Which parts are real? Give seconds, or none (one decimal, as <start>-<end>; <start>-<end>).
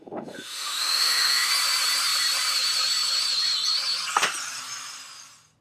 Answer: 1.5-5.6